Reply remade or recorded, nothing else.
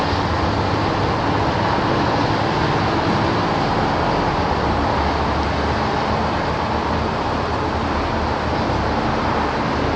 recorded